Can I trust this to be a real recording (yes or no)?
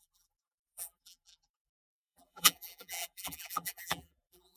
no